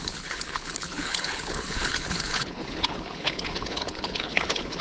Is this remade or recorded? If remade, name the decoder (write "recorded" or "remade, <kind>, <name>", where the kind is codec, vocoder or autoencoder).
remade, codec, HILCodec